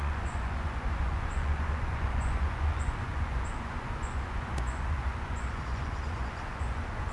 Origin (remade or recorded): remade